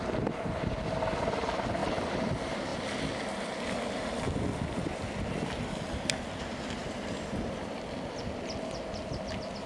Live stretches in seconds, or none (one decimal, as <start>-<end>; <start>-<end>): 0.0-1.8; 2.3-6.8; 8.2-9.7